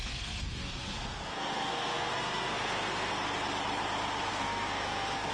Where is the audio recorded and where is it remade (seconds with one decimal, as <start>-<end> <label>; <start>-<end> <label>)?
0.0-3.1 remade; 3.1-4.3 recorded; 4.3-5.3 remade